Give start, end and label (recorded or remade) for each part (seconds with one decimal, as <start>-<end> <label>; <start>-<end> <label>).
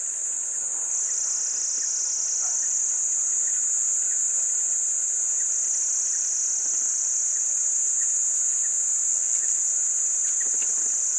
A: 0.0-9.1 recorded; 9.1-9.6 remade; 9.6-11.2 recorded